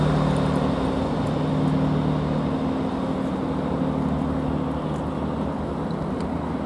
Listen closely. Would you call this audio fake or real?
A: real